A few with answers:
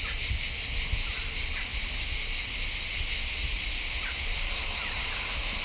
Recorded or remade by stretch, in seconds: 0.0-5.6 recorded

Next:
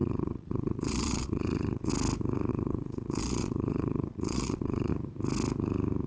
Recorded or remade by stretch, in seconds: 0.0-1.9 remade; 1.9-2.5 recorded; 2.5-4.9 remade; 4.9-6.1 recorded

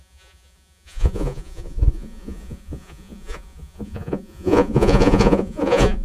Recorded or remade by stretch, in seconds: 0.0-6.0 remade

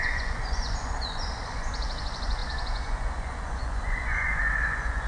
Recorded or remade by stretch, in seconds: 0.0-5.1 remade

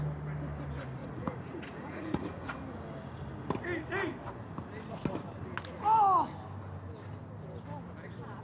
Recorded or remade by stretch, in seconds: 0.0-1.0 recorded; 1.0-2.6 remade; 2.6-8.4 recorded

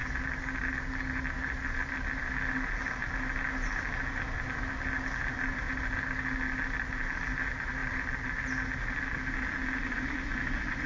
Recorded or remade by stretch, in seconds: 0.0-10.9 recorded